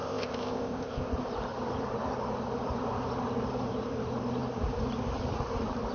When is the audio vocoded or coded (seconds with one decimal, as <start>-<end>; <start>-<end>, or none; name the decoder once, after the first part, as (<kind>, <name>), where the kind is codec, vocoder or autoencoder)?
0.0-1.1 (codec, ZipCodec)